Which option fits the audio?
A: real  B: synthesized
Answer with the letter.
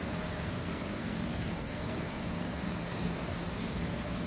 B